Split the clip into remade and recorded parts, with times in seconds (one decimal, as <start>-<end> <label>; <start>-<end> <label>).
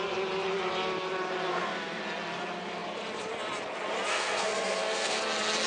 0.0-1.5 recorded; 1.5-2.0 remade; 2.0-4.1 recorded; 4.1-5.2 remade; 5.2-5.7 recorded